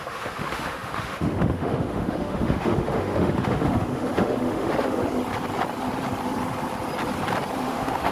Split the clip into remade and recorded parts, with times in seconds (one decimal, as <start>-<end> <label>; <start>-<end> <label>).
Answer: 0.0-5.0 remade; 5.0-7.6 recorded; 7.6-8.1 remade